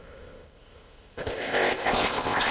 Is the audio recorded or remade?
remade